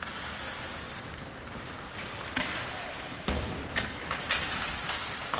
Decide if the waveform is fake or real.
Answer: real